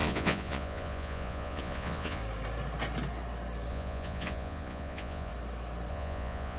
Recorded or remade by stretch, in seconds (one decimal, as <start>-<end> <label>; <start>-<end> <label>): 0.0-2.2 remade; 2.2-3.7 recorded; 3.7-5.3 remade; 5.3-5.9 recorded; 5.9-6.6 remade